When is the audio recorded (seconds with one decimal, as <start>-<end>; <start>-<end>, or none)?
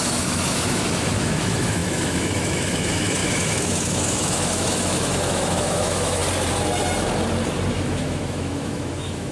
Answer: 6.2-7.7